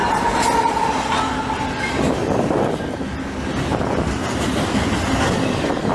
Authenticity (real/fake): real